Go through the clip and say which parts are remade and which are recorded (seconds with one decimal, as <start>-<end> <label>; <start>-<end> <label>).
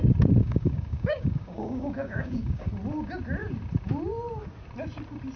0.0-0.4 recorded; 0.4-2.7 remade; 2.7-5.4 recorded